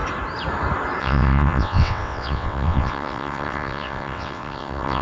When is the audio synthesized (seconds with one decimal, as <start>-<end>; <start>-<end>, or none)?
1.0-5.0